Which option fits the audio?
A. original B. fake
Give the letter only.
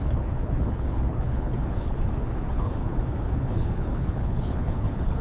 B